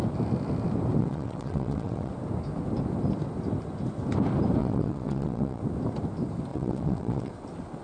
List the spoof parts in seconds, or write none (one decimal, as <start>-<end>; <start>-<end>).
1.0-2.1; 4.6-5.6; 6.5-7.3